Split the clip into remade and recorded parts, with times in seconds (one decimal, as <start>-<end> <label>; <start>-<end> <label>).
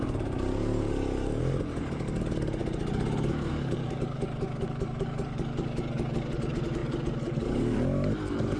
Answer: 0.0-8.6 remade